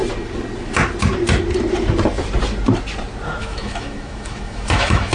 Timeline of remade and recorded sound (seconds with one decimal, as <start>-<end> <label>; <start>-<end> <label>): 0.0-3.4 recorded; 3.4-5.1 remade